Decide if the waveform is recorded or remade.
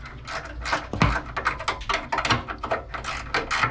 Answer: recorded